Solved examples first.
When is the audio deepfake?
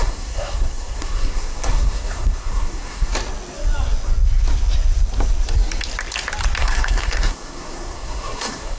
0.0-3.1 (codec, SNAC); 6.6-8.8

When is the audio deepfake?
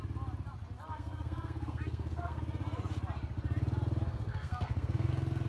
0.9-2.4 (codec, SNAC); 4.1-5.1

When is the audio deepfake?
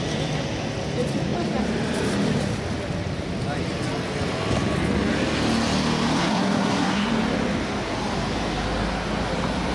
6.2-7.1 (codec, SNAC)